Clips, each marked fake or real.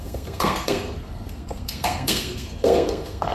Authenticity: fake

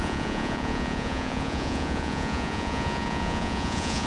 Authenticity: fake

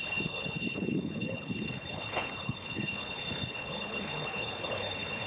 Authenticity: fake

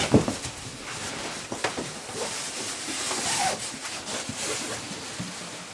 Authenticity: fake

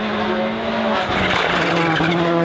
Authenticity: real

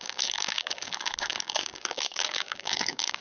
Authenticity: fake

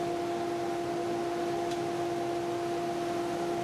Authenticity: real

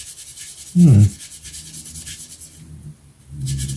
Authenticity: real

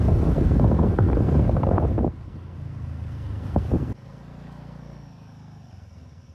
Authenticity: fake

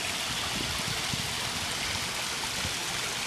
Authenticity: real